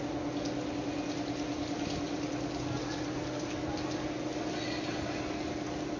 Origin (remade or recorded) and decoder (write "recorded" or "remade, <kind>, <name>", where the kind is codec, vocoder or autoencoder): recorded